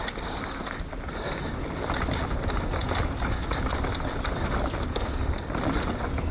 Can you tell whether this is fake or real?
real